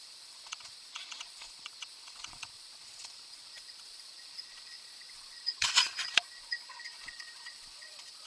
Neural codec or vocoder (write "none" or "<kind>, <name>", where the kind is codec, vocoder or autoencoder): vocoder, Vocos